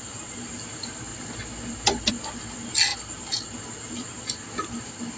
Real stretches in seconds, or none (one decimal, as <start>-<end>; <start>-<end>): 0.0-5.2

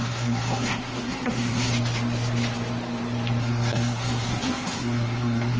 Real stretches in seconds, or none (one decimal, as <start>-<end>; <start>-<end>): 1.7-3.4

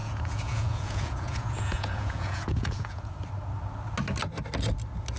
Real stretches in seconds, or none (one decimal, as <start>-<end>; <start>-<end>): 3.1-5.2

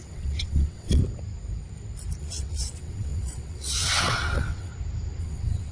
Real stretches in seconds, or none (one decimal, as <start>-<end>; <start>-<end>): 1.0-2.2; 4.7-5.2

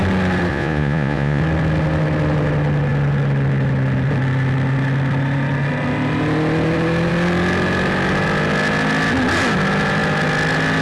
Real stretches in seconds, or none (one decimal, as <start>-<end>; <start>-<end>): 0.0-0.5; 1.4-10.8

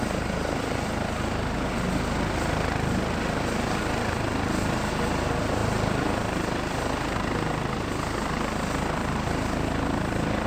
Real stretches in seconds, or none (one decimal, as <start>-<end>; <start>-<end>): 0.0-10.5

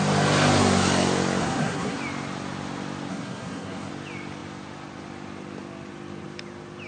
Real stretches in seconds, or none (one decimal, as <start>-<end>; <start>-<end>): 0.0-1.4; 2.0-3.1; 3.9-6.9

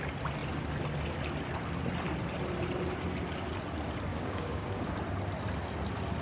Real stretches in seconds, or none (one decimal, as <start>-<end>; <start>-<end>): 0.0-4.1; 4.9-6.2